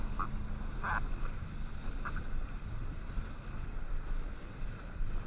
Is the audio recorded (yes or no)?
yes